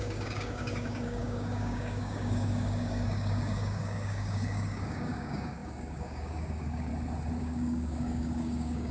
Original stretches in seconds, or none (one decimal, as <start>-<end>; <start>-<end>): 6.9-7.4